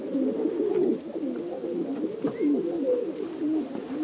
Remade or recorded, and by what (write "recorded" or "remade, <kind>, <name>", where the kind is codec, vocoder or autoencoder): recorded